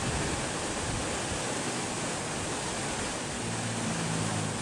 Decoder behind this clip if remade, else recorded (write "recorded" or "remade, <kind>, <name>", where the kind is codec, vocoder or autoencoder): recorded